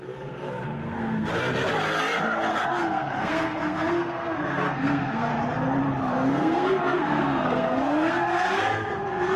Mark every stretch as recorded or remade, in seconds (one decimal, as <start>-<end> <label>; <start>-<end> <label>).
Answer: 0.0-1.3 remade; 1.3-2.5 recorded; 2.5-5.3 remade; 5.3-6.1 recorded; 6.1-9.4 remade